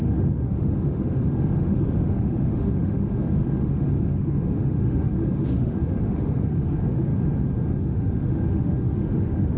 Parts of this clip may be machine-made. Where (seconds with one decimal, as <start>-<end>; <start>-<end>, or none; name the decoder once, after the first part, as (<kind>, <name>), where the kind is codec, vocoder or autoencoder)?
0.0-7.1 (autoencoder, DAC-VAE); 7.7-9.6